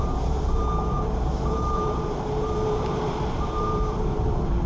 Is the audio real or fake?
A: fake